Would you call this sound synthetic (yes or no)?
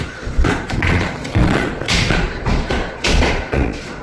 yes